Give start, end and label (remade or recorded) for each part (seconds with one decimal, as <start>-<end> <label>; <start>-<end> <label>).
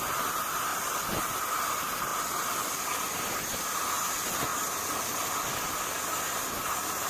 0.0-2.1 recorded; 2.1-3.5 remade; 3.5-7.1 recorded